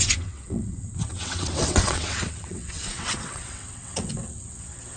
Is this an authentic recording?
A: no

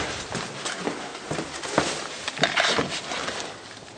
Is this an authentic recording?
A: yes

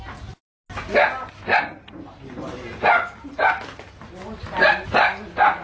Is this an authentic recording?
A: yes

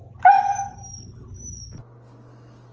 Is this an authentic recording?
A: yes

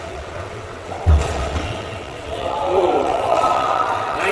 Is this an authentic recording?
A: no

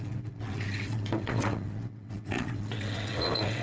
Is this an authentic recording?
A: no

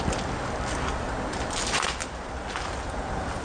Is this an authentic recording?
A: yes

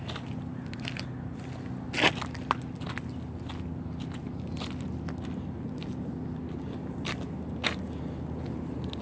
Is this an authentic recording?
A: yes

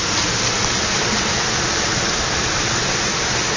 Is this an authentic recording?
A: yes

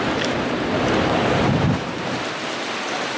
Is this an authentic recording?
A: yes